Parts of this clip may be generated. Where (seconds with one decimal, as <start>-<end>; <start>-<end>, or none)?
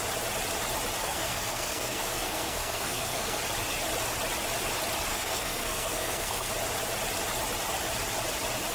1.0-3.4; 5.1-6.5